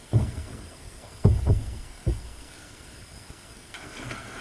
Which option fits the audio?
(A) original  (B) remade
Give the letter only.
B